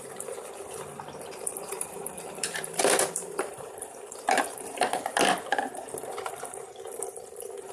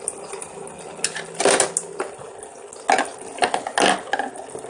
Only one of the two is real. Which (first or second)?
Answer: second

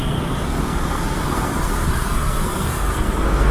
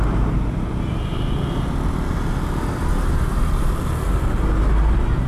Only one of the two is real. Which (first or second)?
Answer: second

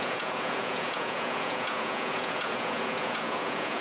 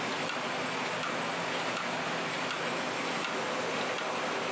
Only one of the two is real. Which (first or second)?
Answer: second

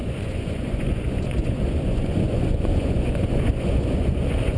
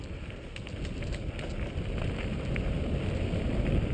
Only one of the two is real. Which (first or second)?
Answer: second